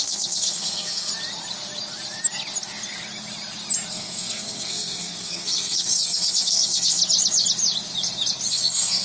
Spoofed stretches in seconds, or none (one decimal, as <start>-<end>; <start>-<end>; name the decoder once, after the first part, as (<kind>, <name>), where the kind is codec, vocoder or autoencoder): 0.0-1.1 (codec, SNAC); 3.9-7.0; 8.5-9.0